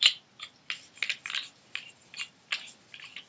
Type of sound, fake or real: real